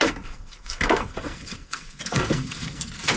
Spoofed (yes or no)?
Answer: yes